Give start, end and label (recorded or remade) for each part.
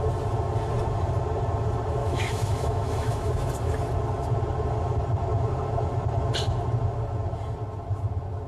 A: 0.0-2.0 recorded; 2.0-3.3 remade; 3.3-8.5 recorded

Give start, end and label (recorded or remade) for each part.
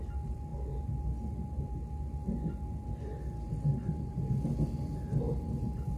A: 0.0-6.0 recorded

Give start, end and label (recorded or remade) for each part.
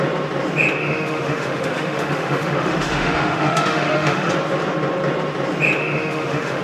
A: 0.0-0.8 recorded; 0.8-4.3 remade; 4.3-5.8 recorded; 5.8-6.6 remade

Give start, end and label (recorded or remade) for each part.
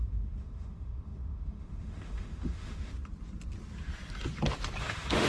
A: 0.0-2.9 remade; 2.9-4.8 recorded; 4.8-5.3 remade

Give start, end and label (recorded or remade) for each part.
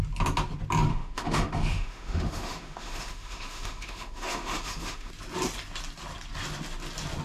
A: 0.0-0.9 recorded; 0.9-5.1 remade; 5.1-7.2 recorded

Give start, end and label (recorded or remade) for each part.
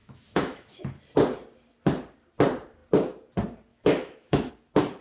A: 0.0-0.8 remade; 0.8-3.7 recorded; 3.7-4.5 remade; 4.5-5.0 recorded